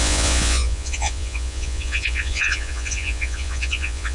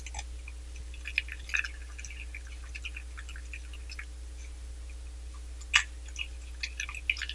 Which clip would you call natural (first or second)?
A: second